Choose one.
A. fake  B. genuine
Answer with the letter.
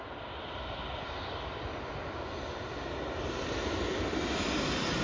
B